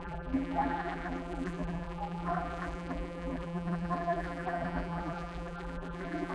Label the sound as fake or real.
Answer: fake